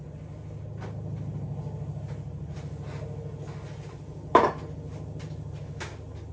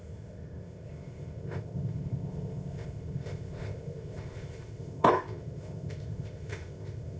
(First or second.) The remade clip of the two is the second